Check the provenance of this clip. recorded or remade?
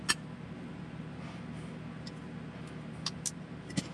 recorded